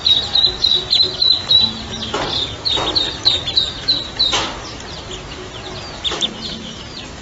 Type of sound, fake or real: real